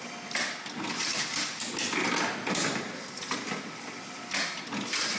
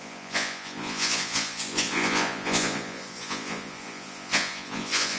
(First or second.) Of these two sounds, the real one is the first